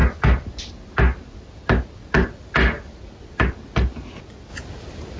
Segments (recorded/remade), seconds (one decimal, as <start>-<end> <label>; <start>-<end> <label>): 0.0-5.2 recorded